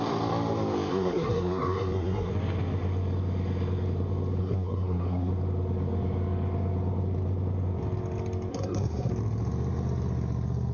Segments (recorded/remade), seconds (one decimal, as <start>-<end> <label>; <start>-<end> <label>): 0.0-0.9 recorded; 0.9-2.3 remade; 2.3-4.4 recorded; 4.4-5.3 remade; 5.3-8.5 recorded; 8.5-9.1 remade; 9.1-10.7 recorded